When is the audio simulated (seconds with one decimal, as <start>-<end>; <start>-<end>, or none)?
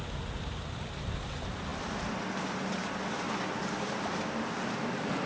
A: none